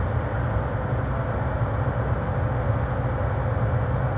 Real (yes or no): yes